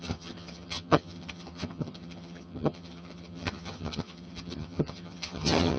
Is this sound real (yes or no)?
no